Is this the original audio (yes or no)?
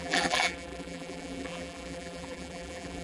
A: no